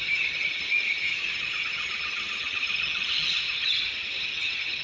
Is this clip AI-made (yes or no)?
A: yes